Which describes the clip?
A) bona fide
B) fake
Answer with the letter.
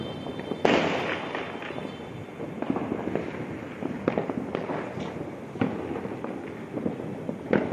A